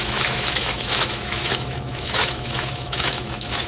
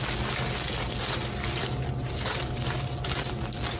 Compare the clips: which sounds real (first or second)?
second